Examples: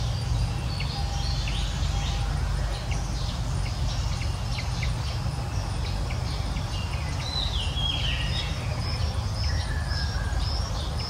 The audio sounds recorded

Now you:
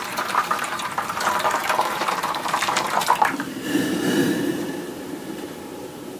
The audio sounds remade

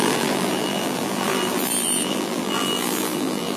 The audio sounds remade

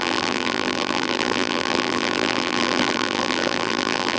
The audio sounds remade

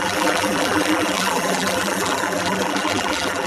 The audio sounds remade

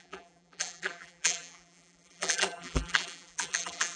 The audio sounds remade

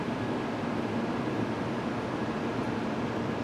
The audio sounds recorded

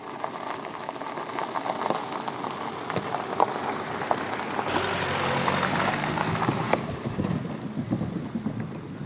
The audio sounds recorded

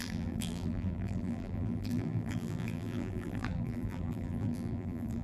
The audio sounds remade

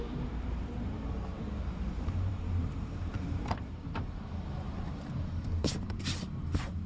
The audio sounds remade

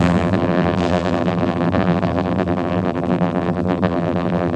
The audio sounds remade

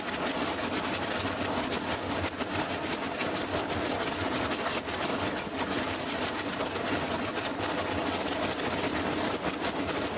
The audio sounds recorded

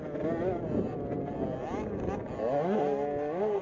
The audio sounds recorded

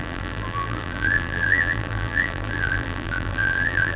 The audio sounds remade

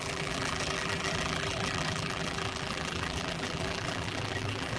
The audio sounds remade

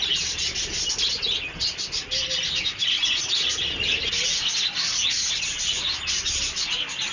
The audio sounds recorded